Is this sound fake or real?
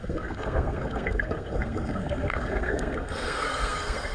fake